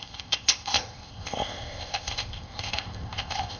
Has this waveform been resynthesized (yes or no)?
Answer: yes